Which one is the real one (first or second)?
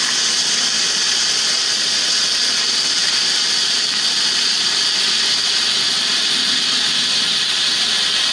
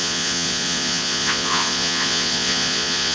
first